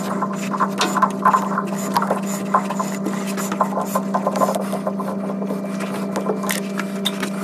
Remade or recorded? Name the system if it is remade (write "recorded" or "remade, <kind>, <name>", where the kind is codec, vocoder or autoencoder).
recorded